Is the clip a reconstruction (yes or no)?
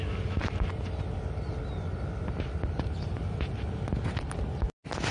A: no